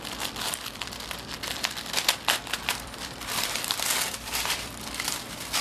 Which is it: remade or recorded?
remade